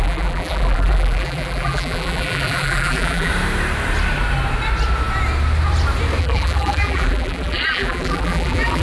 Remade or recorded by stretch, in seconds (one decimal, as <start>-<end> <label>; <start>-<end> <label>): 0.0-3.3 remade; 3.3-6.2 recorded; 6.2-8.8 remade